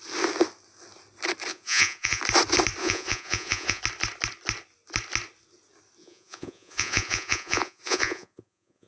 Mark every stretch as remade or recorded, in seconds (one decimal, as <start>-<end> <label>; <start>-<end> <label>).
0.0-1.5 recorded; 1.5-2.2 remade; 2.2-2.8 recorded; 2.8-3.8 remade; 3.8-6.0 recorded; 6.0-8.9 remade